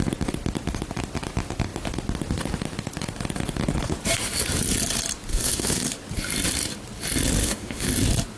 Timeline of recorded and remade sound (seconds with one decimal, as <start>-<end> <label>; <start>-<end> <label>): 0.0-5.3 recorded; 5.3-5.8 remade; 5.8-7.4 recorded; 7.4-7.9 remade; 7.9-8.4 recorded